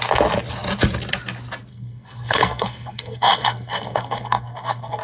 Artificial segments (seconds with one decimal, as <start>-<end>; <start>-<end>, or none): 1.7-5.0